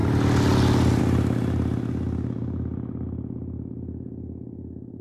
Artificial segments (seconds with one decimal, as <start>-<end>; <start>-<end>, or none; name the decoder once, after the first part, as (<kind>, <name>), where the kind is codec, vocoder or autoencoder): none